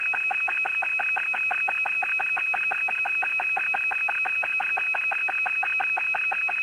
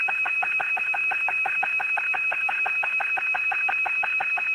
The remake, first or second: second